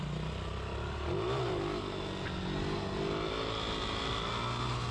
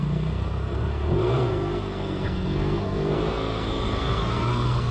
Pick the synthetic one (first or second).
second